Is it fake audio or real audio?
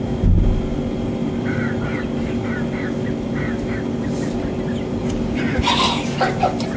real